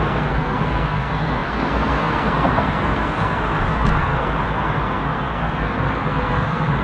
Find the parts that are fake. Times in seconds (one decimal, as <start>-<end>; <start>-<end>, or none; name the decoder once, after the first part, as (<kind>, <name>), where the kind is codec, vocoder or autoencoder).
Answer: 0.0-6.8 (codec, SNAC)